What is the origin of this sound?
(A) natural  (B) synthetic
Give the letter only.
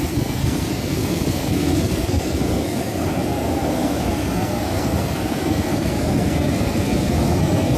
B